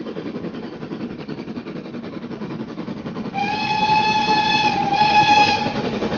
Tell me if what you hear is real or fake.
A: fake